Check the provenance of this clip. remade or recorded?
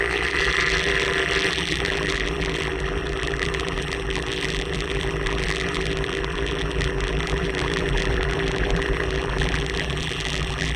remade